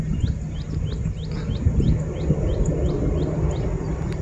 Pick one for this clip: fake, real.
real